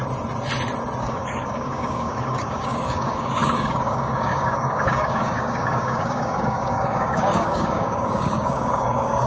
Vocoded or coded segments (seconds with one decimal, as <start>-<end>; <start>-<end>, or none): 1.0-9.3